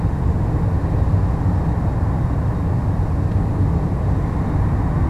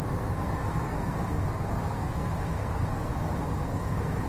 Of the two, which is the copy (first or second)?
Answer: second